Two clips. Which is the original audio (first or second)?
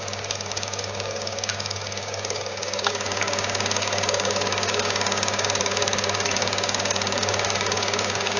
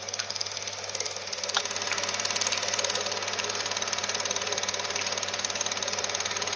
second